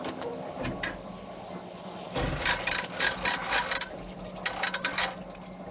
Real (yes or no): yes